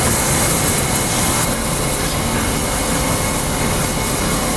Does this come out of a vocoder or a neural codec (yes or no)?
no